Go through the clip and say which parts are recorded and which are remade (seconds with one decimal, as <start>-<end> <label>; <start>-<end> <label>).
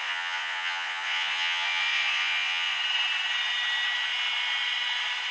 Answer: 0.0-2.8 remade; 2.8-5.3 recorded